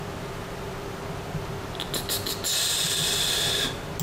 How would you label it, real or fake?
real